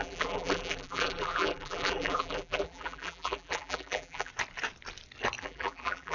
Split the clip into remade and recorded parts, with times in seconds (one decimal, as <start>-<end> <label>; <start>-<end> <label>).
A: 0.0-4.3 remade; 4.3-5.4 recorded; 5.4-6.1 remade